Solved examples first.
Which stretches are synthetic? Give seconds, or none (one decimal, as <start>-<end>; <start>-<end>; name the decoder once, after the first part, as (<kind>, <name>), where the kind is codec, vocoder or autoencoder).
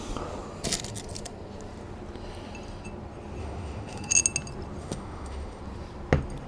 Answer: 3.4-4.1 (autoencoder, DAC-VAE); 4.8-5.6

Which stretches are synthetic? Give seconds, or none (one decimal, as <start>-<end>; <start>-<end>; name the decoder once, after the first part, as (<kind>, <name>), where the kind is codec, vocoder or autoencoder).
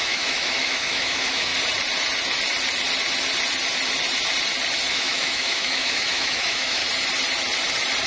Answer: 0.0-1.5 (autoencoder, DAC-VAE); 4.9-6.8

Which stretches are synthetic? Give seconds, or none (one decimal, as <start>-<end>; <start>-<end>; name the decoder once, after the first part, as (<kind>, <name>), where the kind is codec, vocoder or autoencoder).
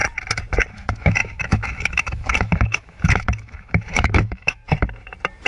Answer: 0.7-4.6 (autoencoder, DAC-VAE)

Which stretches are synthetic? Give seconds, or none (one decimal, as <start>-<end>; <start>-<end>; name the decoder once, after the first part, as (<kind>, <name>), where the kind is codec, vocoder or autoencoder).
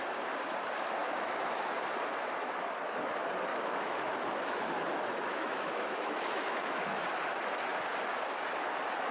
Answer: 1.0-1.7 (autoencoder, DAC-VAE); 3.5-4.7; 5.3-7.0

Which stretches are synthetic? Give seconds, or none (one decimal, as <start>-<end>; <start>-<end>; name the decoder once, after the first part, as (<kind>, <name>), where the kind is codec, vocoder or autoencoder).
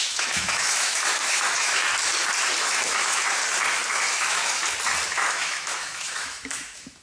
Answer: 0.0-1.9 (autoencoder, DAC-VAE); 2.6-3.4; 3.9-4.6; 5.1-7.0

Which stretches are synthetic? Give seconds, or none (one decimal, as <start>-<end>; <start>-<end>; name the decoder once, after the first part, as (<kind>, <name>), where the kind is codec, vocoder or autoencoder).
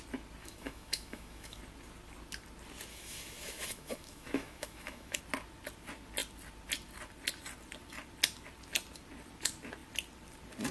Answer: 0.4-1.6 (autoencoder, DAC-VAE); 2.9-5.2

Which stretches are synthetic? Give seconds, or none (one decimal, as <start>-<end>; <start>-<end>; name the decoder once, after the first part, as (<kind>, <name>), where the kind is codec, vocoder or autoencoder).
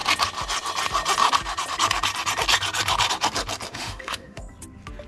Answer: 3.7-4.4 (autoencoder, DAC-VAE)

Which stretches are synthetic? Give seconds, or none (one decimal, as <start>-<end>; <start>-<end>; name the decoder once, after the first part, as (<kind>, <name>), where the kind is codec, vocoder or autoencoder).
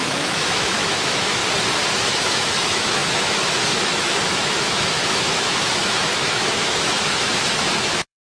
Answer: 0.0-1.4 (autoencoder, DAC-VAE); 1.9-8.3